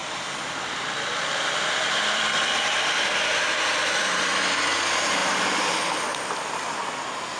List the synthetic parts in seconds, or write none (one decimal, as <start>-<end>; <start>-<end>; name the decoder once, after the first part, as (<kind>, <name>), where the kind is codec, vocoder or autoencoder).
0.0-4.4 (vocoder, BigVGAN v2)